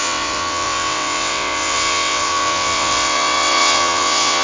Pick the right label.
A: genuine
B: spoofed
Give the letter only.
B